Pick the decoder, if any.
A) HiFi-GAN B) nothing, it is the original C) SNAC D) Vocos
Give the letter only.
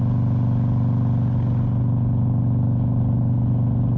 B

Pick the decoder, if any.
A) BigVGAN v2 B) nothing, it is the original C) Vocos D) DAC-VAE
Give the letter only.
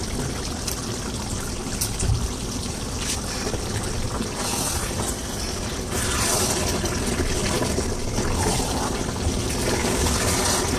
B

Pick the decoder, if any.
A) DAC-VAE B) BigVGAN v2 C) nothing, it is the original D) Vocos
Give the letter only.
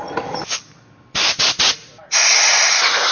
C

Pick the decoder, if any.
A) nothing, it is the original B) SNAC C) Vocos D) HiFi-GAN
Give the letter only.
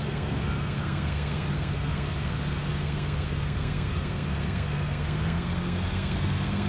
B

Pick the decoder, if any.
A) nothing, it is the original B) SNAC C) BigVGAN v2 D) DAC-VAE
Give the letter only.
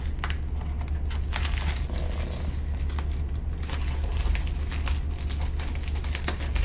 A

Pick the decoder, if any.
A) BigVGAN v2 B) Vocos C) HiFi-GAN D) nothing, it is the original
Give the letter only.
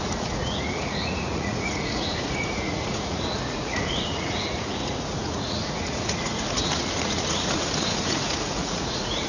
B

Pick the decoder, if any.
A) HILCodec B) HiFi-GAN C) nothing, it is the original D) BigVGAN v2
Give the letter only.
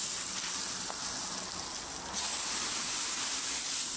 C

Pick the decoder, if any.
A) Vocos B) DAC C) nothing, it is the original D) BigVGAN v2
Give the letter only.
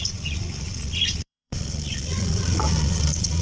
A